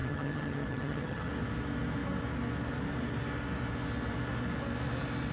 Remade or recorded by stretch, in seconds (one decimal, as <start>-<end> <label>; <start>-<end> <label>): 0.0-1.3 remade; 1.3-5.3 recorded